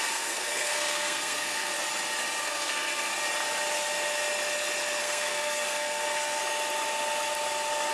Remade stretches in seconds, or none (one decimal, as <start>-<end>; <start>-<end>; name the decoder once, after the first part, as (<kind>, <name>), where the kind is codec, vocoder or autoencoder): 0.0-1.7 (codec, SNAC); 2.4-3.1; 5.0-6.4